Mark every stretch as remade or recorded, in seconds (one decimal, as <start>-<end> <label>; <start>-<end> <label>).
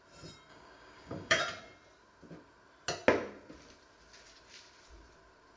0.0-0.5 recorded; 0.5-1.4 remade; 1.4-5.6 recorded